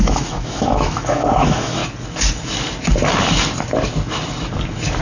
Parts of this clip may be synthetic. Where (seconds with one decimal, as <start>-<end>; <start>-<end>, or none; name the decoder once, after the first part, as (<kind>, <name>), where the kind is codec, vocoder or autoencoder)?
0.0-1.8 (autoencoder, DAC-VAE)